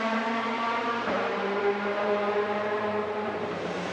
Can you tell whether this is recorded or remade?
remade